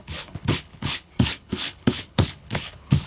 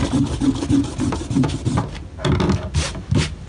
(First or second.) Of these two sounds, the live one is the second